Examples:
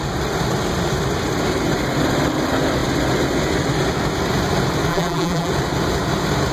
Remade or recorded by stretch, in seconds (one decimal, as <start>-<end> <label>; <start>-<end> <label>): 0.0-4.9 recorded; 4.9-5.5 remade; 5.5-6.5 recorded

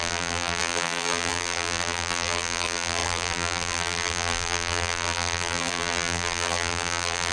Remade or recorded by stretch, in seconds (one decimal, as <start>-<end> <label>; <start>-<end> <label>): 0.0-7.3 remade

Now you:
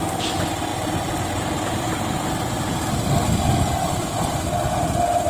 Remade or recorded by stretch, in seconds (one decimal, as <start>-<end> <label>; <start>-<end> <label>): 0.0-0.7 recorded; 0.7-3.3 remade; 3.3-5.3 recorded

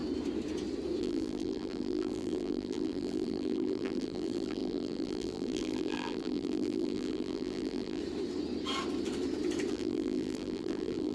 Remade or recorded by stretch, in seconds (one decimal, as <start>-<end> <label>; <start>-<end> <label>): 0.0-1.0 recorded; 1.0-8.0 remade; 8.0-9.7 recorded; 9.7-11.1 remade

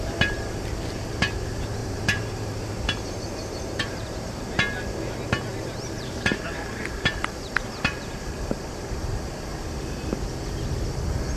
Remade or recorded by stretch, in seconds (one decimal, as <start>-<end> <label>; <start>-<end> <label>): 0.0-1.8 recorded; 1.8-4.2 remade; 4.2-5.5 recorded; 5.5-9.0 remade; 9.0-11.4 recorded